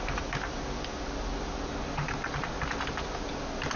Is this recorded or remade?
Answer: recorded